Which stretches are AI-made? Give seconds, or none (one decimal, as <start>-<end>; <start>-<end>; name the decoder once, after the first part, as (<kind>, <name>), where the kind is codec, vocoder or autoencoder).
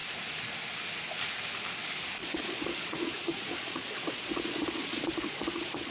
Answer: 2.2-5.9 (vocoder, Vocos)